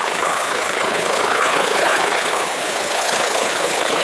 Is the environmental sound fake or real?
fake